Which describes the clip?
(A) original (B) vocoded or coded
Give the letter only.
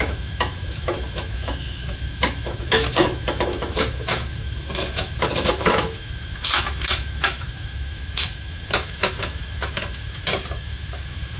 B